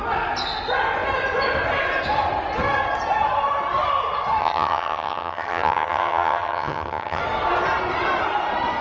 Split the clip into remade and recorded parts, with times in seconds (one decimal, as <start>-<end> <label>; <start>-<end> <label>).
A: 0.0-4.4 recorded; 4.4-7.2 remade; 7.2-8.8 recorded